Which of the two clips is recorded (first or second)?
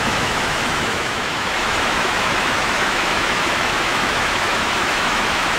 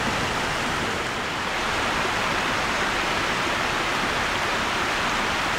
second